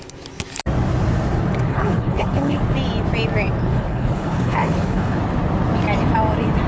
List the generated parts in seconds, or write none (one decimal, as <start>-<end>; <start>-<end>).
1.7-2.6; 3.6-5.2

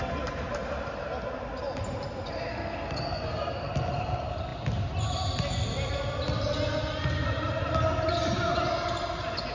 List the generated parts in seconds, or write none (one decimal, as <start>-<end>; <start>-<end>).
2.5-3.6